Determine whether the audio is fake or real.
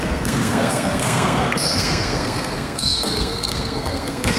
fake